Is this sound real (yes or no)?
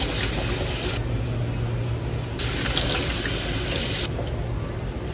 yes